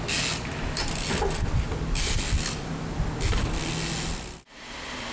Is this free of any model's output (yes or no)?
yes